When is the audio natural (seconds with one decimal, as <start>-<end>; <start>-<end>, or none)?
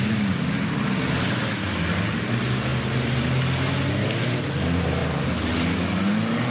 0.0-6.5